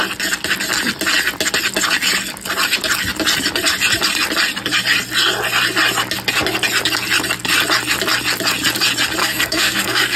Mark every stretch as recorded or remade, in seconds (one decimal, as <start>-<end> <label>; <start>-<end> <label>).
0.0-9.2 recorded; 9.2-10.2 remade